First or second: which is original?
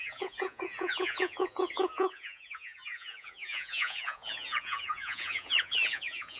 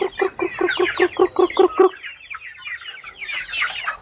second